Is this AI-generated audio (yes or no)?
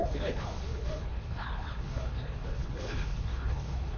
yes